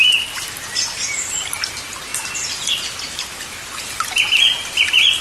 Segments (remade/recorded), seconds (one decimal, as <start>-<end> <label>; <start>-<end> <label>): 0.0-5.2 recorded